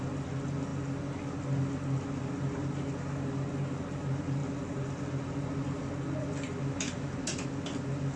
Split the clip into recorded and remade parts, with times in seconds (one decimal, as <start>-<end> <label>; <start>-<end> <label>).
0.0-8.2 recorded